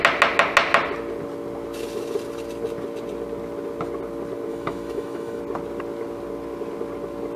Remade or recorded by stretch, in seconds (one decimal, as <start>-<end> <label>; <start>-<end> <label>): 0.0-4.5 recorded; 4.5-5.4 remade; 5.4-7.4 recorded

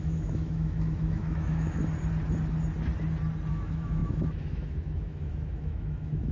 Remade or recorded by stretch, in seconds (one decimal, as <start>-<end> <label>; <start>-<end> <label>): 0.0-1.8 remade; 1.8-3.5 recorded; 3.5-6.3 remade

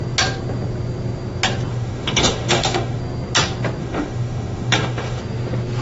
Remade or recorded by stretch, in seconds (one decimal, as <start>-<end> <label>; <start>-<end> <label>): 0.0-1.7 recorded; 1.7-3.0 remade; 3.0-3.8 recorded; 3.8-5.2 remade; 5.2-5.8 recorded

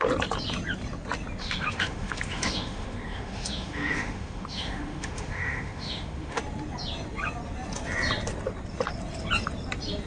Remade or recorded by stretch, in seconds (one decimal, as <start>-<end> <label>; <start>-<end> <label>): 0.0-1.4 recorded; 1.4-6.4 remade; 6.4-10.1 recorded